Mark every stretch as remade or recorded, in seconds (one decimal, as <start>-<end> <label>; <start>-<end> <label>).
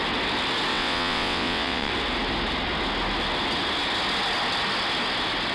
0.0-0.7 recorded; 0.7-1.9 remade; 1.9-5.5 recorded